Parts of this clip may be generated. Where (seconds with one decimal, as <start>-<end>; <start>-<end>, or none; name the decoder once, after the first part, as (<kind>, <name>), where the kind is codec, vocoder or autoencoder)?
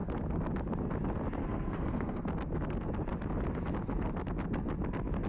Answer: 1.4-2.2 (codec, SNAC)